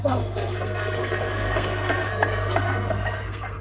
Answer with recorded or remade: remade